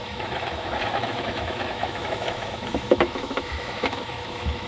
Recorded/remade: remade